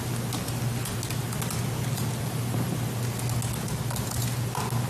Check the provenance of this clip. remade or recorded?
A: recorded